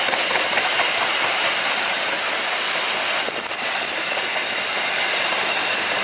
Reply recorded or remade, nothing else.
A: recorded